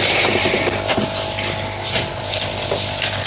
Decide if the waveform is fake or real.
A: real